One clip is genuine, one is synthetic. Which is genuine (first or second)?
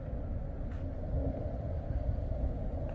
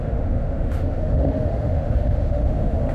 first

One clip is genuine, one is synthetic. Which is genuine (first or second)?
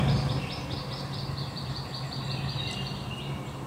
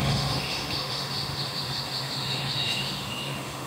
first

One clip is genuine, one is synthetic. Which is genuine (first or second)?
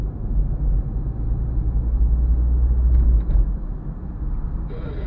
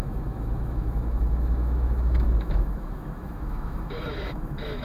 first